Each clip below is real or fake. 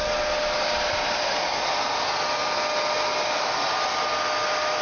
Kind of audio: real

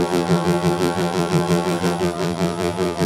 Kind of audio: fake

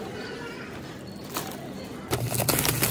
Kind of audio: real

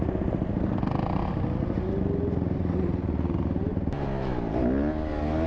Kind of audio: real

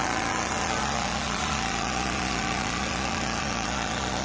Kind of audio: fake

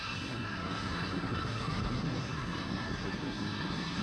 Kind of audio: fake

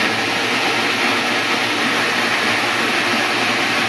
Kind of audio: real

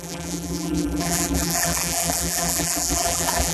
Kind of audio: fake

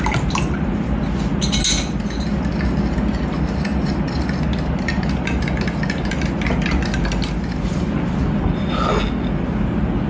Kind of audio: real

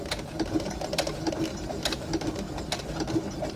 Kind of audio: real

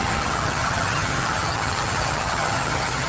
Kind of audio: fake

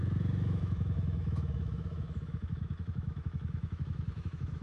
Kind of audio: fake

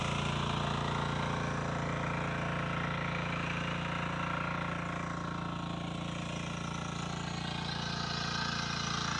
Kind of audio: real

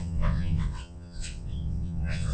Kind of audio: fake